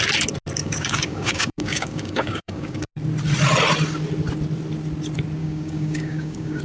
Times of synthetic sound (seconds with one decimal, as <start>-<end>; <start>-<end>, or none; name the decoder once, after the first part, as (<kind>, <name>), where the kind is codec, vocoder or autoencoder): 0.6-2.9 (codec, DAC); 5.4-6.6